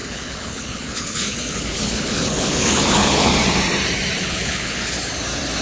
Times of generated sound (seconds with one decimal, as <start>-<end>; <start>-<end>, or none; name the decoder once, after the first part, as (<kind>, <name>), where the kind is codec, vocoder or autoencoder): 0.0-3.3 (codec, HILCodec); 4.2-5.0